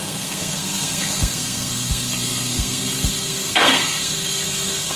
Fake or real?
fake